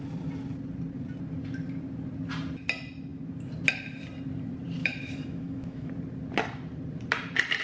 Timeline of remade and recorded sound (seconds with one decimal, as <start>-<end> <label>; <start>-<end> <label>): 0.0-4.8 recorded; 4.8-5.9 remade; 5.9-7.6 recorded